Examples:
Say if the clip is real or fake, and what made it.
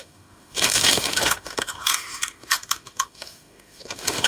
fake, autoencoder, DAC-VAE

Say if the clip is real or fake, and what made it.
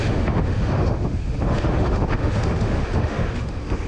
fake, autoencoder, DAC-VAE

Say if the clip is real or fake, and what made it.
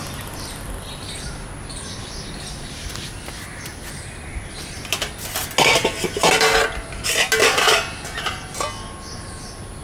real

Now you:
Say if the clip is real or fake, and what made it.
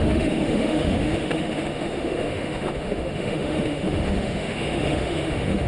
fake, autoencoder, DAC-VAE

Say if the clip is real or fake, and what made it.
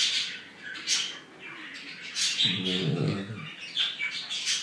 real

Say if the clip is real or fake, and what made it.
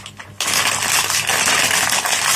real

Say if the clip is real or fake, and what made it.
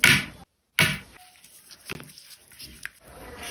real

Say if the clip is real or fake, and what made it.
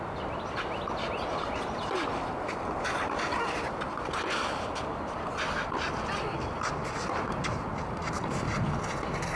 real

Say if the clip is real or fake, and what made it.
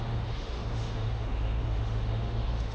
fake, autoencoder, DAC-VAE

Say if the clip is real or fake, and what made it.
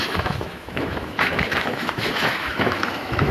fake, autoencoder, DAC-VAE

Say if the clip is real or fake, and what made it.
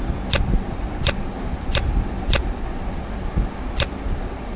real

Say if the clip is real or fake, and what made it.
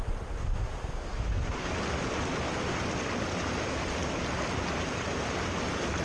real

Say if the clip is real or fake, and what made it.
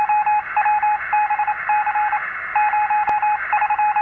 real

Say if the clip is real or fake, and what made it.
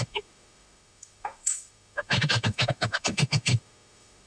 fake, autoencoder, DAC-VAE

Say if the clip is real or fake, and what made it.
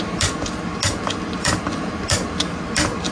real